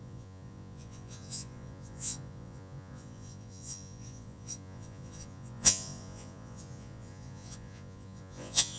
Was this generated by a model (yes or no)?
yes